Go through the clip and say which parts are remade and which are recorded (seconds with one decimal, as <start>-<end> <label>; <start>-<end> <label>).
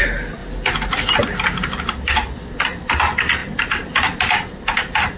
0.0-5.2 recorded